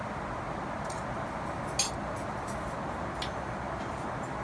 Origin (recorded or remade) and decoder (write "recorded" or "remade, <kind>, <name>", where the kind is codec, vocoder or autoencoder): recorded